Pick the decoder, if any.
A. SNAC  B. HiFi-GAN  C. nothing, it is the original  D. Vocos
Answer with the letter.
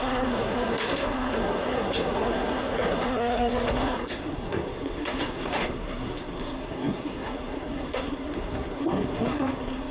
A